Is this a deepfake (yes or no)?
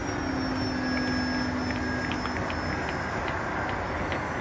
no